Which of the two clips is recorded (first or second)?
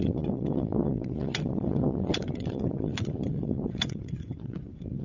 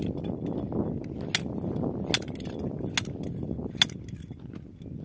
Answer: second